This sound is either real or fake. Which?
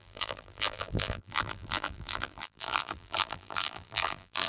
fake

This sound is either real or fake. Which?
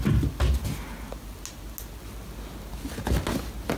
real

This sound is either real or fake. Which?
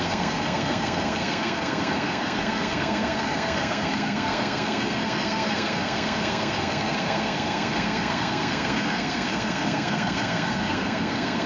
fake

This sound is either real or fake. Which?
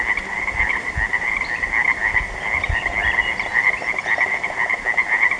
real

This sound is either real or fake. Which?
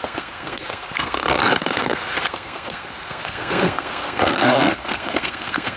fake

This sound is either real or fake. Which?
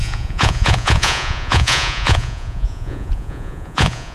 fake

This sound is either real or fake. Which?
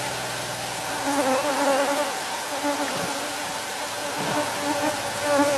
real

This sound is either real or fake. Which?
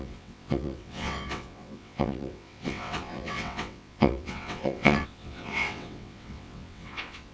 fake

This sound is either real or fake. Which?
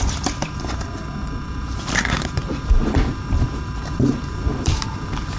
fake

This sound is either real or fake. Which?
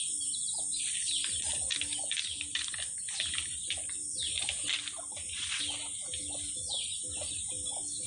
real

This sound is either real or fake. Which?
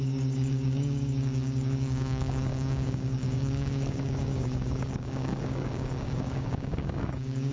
fake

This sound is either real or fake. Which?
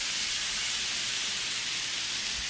real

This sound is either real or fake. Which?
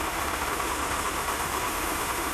fake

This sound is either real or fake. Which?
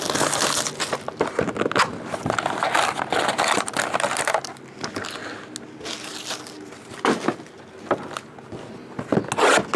real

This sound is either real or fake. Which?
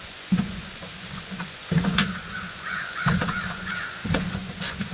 fake